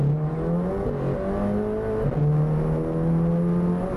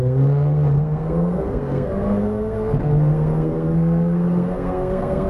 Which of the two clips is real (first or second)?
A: first